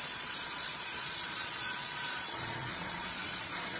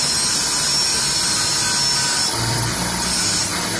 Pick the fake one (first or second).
first